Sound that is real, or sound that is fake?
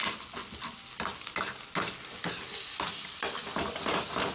real